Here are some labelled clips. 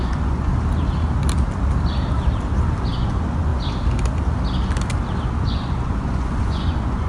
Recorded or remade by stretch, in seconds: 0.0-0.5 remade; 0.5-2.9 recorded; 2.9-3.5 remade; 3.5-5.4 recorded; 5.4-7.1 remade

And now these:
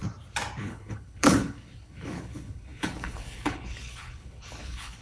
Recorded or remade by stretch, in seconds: 0.0-0.6 recorded; 0.6-5.0 remade

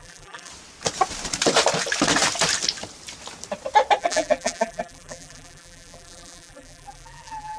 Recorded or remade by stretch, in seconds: 0.0-0.5 remade; 0.5-4.0 recorded; 4.0-7.6 remade